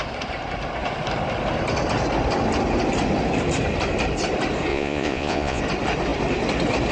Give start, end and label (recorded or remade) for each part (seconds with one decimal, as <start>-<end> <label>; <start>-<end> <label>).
0.0-4.7 recorded; 4.7-5.6 remade; 5.6-6.9 recorded